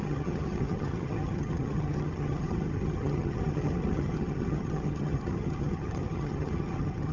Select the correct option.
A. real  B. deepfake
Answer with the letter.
B